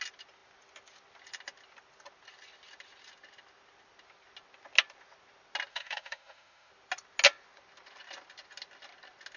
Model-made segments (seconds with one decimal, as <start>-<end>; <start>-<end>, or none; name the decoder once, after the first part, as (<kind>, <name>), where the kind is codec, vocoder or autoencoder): 5.7-6.7 (autoencoder, DAC-VAE)

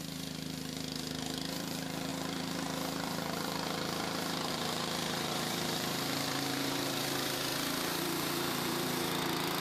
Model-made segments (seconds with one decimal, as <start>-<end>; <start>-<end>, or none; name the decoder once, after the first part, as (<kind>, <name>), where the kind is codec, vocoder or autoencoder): 0.0-7.5 (vocoder, BigVGAN v2); 8.0-9.6

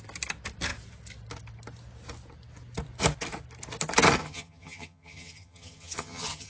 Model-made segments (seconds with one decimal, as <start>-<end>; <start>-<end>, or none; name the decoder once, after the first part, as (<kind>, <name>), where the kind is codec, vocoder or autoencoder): 4.2-6.5 (vocoder, HiFi-GAN)

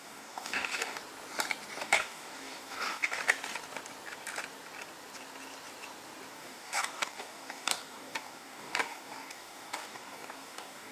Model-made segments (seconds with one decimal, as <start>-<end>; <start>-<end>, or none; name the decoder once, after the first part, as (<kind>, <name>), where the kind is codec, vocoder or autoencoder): 0.0-1.0 (codec, DAC); 1.8-3.2; 6.3-10.9

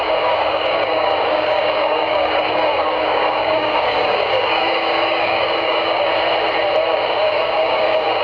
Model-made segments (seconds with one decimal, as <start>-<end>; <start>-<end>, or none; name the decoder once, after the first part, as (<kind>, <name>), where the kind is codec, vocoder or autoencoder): 0.0-6.1 (codec, DAC); 6.9-8.2